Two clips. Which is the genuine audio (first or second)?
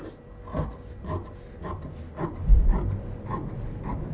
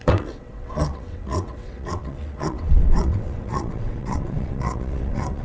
first